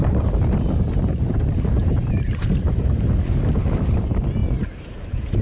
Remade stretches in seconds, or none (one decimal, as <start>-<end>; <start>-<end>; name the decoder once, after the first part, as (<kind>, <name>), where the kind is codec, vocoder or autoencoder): 0.0-3.2 (vocoder, BigVGAN v2); 4.4-5.4